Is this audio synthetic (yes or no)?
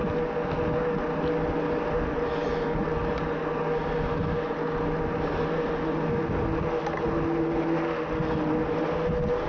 no